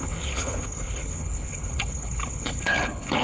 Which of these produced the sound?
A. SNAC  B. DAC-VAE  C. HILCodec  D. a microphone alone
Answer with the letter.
C